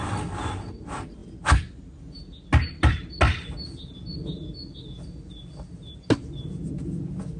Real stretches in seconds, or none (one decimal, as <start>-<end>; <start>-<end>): 0.0-7.4